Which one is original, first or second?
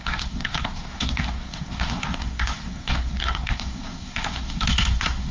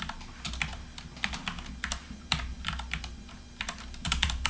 second